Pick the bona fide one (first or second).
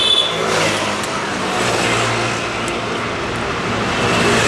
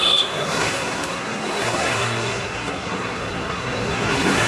first